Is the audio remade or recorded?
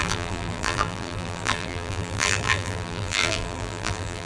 remade